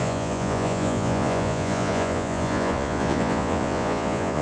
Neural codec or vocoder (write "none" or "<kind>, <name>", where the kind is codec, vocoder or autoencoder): vocoder, Vocos